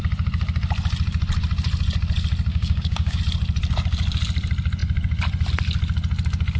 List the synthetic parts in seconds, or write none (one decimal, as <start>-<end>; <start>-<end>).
2.5-3.2

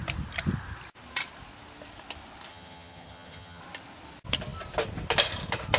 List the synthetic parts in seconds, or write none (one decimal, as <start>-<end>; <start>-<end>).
2.5-3.6

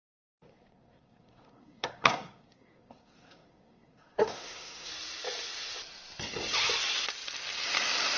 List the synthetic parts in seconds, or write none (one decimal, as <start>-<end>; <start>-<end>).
0.0-4.9

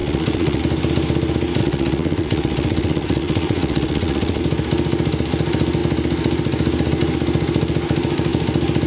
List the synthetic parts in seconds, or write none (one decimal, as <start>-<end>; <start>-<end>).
0.0-0.6; 1.6-4.4

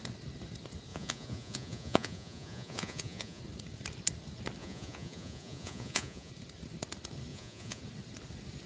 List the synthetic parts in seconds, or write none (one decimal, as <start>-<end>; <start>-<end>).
0.9-3.4; 4.6-6.3; 7.3-7.8

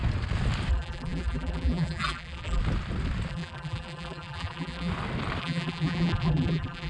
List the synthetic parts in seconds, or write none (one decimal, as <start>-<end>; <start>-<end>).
0.7-2.6; 3.3-4.9; 5.4-6.9